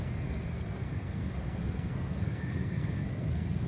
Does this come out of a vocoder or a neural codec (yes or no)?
yes